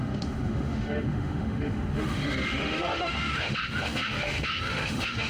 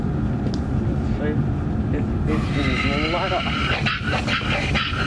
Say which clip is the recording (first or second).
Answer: second